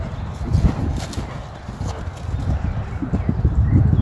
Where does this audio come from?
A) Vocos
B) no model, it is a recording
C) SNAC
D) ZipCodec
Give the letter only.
B